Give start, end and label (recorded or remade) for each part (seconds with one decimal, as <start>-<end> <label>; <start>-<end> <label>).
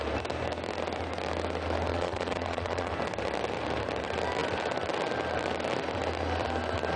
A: 0.0-1.9 recorded; 1.9-2.9 remade; 2.9-7.0 recorded